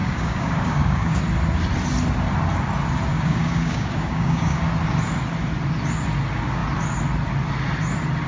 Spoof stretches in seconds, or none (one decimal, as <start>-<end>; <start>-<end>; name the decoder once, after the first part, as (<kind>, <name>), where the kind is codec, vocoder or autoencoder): 0.0-1.2 (codec, DAC); 3.1-4.6